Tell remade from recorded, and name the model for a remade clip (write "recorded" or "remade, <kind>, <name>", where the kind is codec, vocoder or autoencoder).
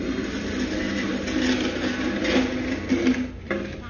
recorded